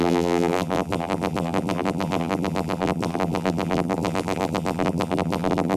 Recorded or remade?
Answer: remade